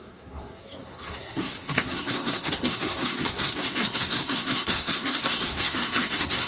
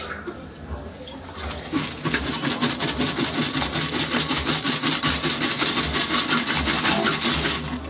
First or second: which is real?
second